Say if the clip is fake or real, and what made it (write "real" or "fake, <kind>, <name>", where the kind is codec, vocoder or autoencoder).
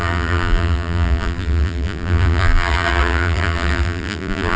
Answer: fake, vocoder, BigVGAN v2